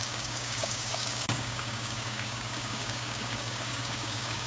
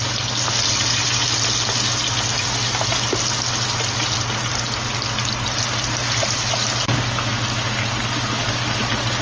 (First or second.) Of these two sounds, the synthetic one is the first